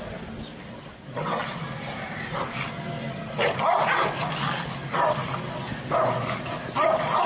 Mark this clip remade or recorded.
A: recorded